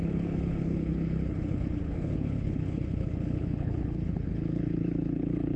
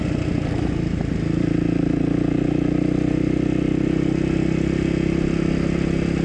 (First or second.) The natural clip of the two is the second